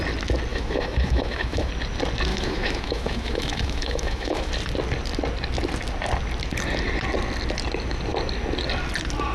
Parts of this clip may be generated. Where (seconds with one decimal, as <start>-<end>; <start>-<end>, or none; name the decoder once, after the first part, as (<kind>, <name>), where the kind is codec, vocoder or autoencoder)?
0.5-1.7 (autoencoder, DAC-VAE); 2.3-4.5